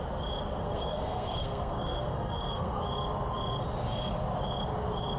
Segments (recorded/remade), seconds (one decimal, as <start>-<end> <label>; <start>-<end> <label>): 0.0-0.6 recorded; 0.6-2.8 remade; 2.8-5.2 recorded